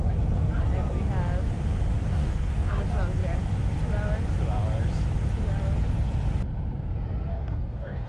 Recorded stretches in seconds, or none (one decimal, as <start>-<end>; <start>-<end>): 0.0-2.1; 2.7-7.3